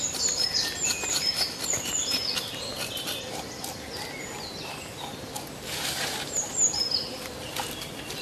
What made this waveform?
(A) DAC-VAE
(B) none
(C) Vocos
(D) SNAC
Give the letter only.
B